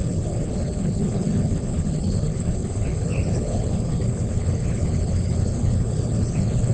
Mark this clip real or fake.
fake